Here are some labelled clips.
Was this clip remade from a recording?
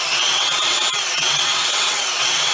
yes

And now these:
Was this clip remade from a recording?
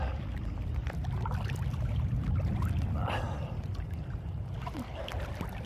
no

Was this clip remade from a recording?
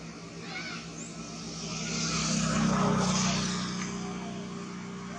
no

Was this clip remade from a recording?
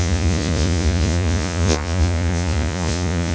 yes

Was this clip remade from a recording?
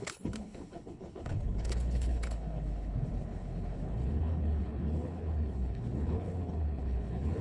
yes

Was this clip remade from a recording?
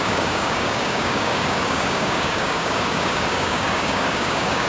yes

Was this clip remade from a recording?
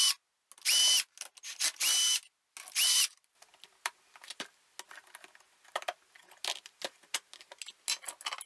no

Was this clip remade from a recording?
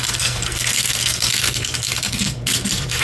yes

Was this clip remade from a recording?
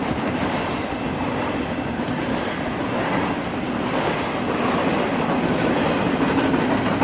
no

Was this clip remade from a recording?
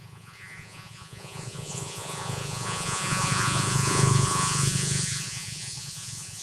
yes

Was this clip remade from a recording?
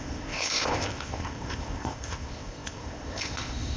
yes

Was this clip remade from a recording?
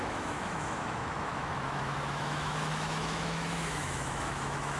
yes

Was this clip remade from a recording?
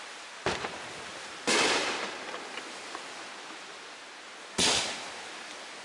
no